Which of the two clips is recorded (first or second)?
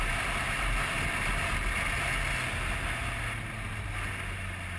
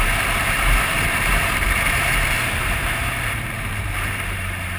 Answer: first